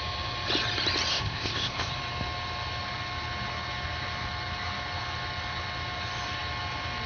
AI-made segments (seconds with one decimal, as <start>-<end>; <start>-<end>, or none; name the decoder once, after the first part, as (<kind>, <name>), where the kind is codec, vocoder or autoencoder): 1.1-1.9 (codec, ZipCodec)